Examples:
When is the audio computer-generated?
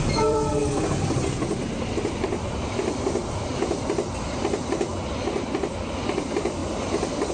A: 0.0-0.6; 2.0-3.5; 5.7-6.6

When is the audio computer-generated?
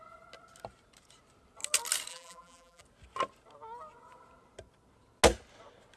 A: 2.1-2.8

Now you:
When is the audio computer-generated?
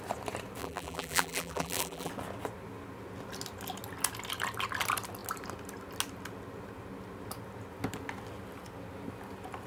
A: 0.6-2.1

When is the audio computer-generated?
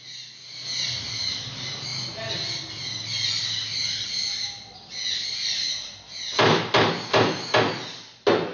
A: 1.9-2.6